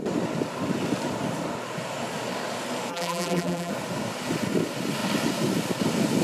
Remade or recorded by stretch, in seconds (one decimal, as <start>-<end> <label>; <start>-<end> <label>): 0.0-2.9 recorded; 2.9-3.7 remade; 3.7-6.2 recorded